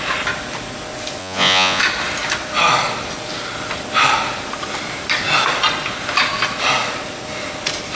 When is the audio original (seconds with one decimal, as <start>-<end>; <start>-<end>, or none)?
0.0-1.2; 1.8-7.9